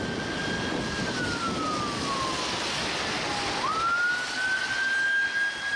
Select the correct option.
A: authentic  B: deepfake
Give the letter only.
A